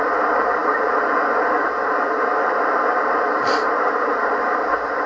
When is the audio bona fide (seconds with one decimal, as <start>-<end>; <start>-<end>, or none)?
0.0-5.1